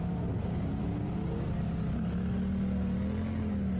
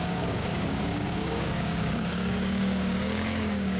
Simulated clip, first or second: second